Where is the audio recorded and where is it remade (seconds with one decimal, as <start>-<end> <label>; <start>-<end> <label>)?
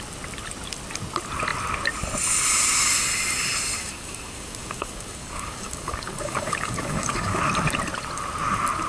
0.0-3.8 recorded; 3.8-7.4 remade; 7.4-8.9 recorded